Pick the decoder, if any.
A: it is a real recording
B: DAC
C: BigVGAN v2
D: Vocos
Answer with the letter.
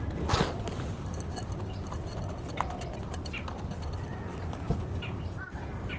A